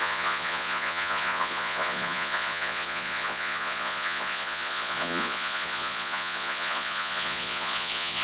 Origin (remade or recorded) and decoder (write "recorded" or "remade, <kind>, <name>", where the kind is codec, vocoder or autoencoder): remade, vocoder, Vocos